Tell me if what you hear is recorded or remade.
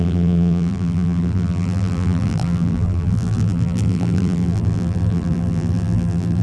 remade